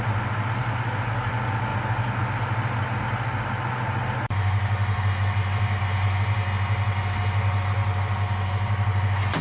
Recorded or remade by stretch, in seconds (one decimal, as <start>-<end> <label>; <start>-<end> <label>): 0.0-9.4 recorded